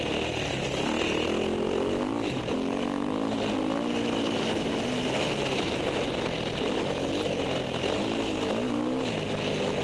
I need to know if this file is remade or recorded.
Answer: recorded